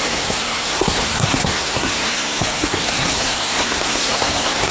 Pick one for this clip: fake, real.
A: fake